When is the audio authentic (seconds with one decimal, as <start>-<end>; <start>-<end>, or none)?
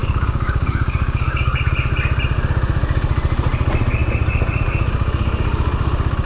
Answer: 1.7-6.3